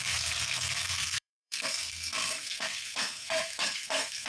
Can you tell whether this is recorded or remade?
remade